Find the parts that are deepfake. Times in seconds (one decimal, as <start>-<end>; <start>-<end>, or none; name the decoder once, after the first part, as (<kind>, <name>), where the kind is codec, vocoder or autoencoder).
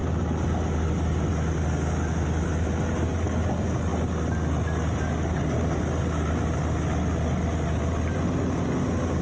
none